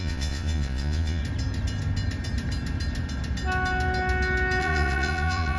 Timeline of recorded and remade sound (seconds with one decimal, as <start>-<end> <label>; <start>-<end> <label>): 0.0-1.2 remade; 1.2-4.6 recorded; 4.6-5.6 remade